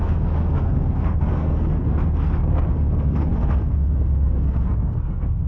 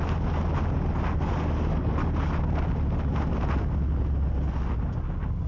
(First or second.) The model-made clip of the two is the first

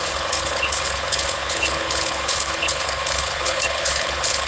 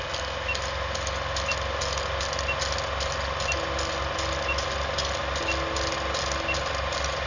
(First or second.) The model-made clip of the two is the first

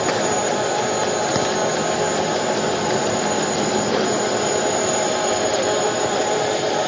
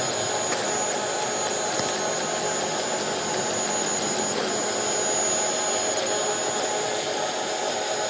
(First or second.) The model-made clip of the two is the first